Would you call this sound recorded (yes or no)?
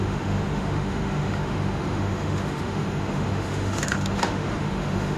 no